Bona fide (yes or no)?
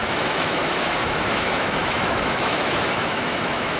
no